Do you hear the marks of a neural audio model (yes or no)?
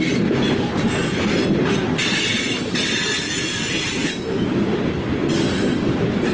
no